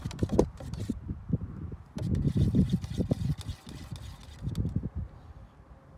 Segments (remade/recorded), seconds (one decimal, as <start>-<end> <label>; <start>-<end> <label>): 0.0-1.1 remade; 1.1-6.0 recorded